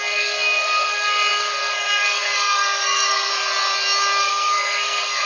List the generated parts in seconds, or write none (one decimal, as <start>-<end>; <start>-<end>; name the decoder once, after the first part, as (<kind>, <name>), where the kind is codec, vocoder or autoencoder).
0.0-3.3 (codec, SNAC); 4.2-5.3